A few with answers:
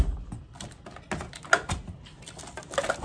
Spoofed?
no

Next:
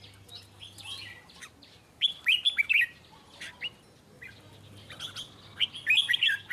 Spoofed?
no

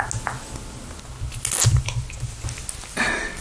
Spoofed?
no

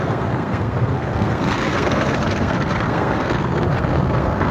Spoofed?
yes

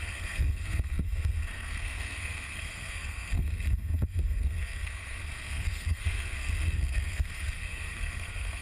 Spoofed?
yes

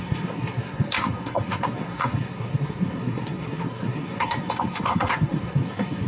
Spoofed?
yes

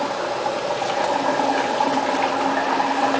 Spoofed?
no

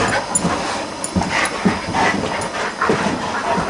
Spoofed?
no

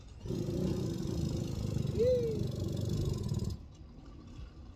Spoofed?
no